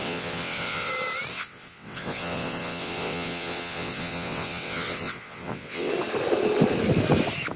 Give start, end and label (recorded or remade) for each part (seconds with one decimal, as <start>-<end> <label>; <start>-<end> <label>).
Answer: 0.0-0.9 remade; 0.9-1.3 recorded; 1.3-5.9 remade; 5.9-7.6 recorded